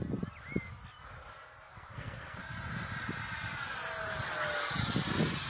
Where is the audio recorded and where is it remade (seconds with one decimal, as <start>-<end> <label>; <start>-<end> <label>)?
0.0-1.7 recorded; 1.7-2.4 remade; 2.4-5.5 recorded

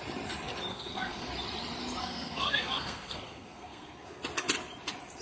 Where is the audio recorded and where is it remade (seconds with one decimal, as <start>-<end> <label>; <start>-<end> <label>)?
0.0-0.7 recorded; 0.7-1.3 remade; 1.3-2.0 recorded; 2.0-4.2 remade; 4.2-5.2 recorded

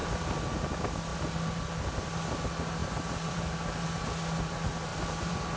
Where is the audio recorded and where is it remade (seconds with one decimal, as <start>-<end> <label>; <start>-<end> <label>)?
0.0-0.7 remade; 0.7-2.8 recorded; 2.8-3.8 remade; 3.8-4.9 recorded; 4.9-5.6 remade

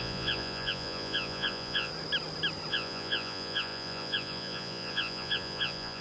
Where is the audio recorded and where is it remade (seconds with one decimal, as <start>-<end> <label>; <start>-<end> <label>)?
0.0-1.9 remade; 1.9-2.7 recorded; 2.7-6.0 remade

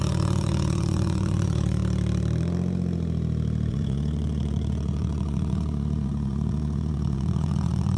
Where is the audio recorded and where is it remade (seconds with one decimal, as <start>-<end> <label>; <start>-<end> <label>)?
0.0-1.8 remade; 1.8-3.7 recorded; 3.7-8.0 remade